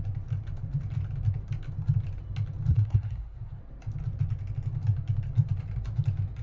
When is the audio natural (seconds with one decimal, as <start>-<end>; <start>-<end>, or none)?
0.0-2.7; 3.6-6.4